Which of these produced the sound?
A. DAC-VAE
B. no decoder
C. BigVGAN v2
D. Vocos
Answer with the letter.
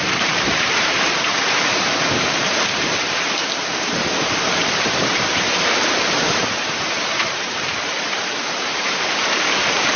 C